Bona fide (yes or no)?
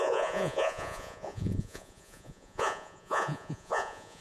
no